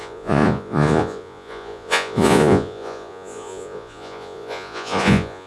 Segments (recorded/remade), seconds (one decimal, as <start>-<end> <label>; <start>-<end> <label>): 0.0-5.5 remade